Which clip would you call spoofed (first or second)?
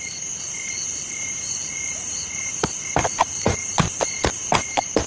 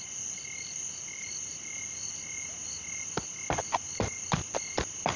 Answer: first